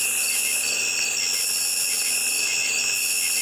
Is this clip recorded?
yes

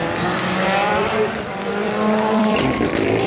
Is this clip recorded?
no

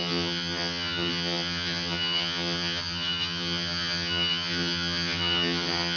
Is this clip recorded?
no